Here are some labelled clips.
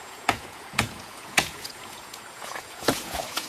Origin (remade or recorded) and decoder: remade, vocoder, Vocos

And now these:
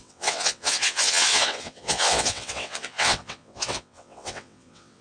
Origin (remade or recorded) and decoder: remade, vocoder, WaveNeXt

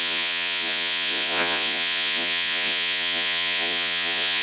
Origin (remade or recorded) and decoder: remade, vocoder, Vocos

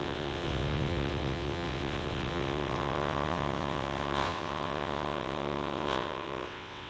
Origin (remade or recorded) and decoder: remade, vocoder, WaveNeXt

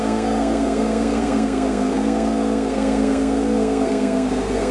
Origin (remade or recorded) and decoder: remade, codec, SNAC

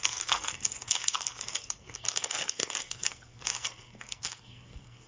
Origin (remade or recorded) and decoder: remade, codec, SNAC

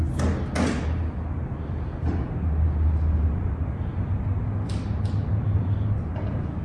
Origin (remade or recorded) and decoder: recorded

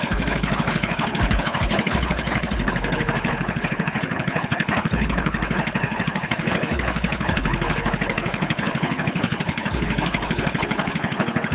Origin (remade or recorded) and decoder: remade, codec, HILCodec